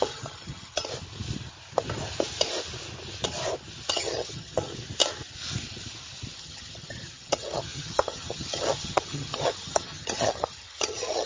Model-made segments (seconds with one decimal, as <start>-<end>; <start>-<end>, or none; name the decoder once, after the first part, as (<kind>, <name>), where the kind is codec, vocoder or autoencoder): 0.0-0.8 (vocoder, HiFi-GAN); 3.9-4.7; 6.4-11.3

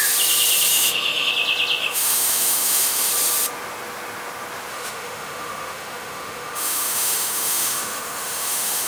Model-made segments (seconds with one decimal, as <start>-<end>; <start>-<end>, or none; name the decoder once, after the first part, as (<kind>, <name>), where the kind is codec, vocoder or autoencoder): 0.7-1.3 (autoencoder, DAC-VAE); 1.8-3.1; 4.7-8.9

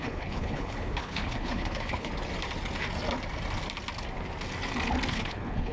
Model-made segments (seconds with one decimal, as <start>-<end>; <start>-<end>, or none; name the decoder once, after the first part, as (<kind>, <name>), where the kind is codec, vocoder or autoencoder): 0.0-2.1 (codec, HILCodec); 5.1-5.7

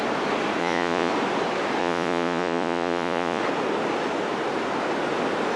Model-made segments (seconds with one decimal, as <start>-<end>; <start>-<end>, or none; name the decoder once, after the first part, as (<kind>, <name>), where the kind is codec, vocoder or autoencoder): 0.6-1.1 (vocoder, Vocos); 1.8-3.4